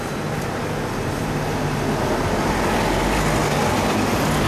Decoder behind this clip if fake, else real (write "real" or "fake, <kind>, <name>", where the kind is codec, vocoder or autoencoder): real